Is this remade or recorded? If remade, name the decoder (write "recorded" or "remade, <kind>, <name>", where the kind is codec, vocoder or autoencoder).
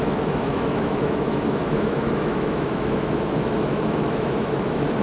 remade, autoencoder, DAC-VAE